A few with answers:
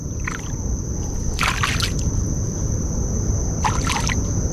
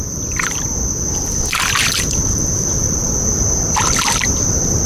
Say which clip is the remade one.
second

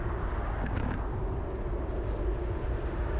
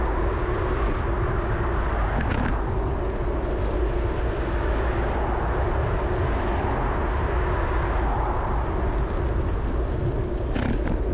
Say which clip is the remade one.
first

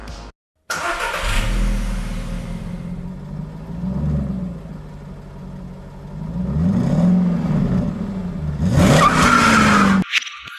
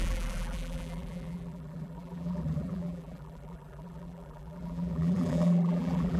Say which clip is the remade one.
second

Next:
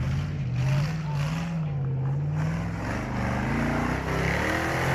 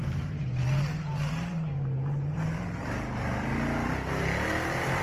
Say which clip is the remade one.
second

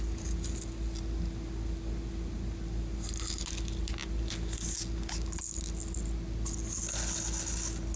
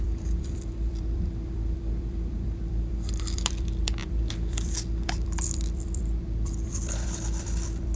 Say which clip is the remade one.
second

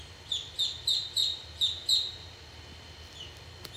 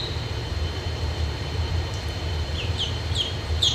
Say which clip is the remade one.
second